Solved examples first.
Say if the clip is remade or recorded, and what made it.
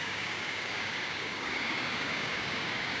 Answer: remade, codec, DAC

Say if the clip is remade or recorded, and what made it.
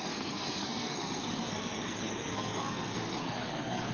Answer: remade, codec, SNAC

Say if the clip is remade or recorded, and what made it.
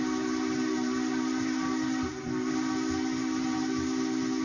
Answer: recorded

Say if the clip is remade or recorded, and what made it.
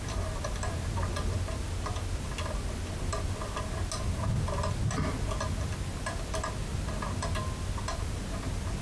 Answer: recorded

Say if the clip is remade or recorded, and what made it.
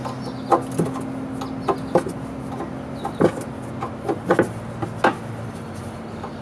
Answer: recorded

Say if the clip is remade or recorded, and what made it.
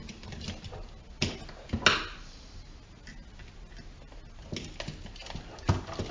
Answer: recorded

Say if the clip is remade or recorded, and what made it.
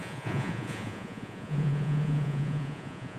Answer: remade, vocoder, Vocos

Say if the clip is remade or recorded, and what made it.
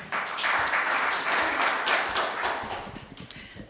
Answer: remade, vocoder, BigVGAN v2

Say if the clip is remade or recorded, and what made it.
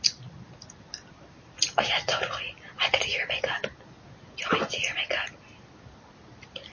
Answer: recorded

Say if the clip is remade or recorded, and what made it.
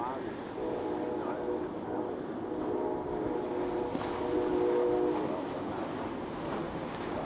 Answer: recorded